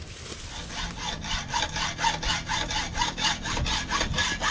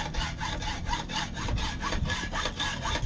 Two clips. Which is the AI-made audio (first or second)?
second